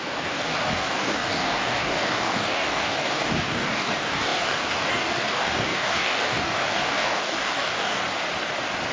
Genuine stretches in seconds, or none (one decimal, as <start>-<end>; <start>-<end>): 8.0-8.9